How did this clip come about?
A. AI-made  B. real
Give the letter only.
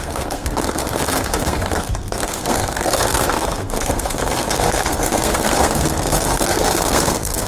A